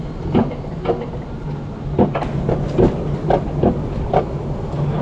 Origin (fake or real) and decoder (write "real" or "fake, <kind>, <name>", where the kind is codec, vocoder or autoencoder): real